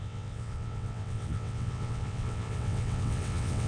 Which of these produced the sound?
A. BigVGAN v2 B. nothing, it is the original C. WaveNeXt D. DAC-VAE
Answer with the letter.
C